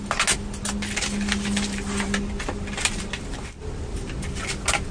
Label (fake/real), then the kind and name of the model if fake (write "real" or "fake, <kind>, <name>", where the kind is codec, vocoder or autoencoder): real